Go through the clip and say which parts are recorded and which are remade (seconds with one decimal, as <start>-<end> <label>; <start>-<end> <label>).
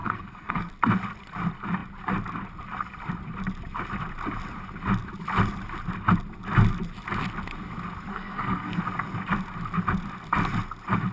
0.0-0.7 remade; 0.7-8.1 recorded; 8.1-8.8 remade; 8.8-11.1 recorded